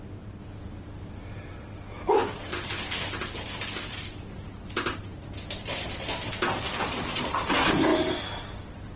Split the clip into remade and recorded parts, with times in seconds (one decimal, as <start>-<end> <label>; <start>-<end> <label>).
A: 0.0-9.0 recorded